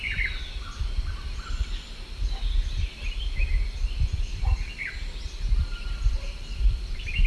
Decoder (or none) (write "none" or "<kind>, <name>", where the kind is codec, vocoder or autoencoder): none